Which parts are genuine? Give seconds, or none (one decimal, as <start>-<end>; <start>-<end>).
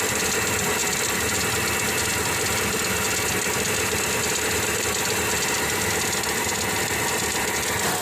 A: 0.0-8.0